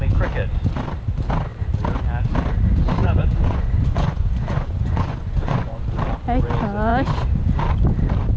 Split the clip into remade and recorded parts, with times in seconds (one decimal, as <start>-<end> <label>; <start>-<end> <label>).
0.0-3.0 recorded; 3.0-5.8 remade; 5.8-8.4 recorded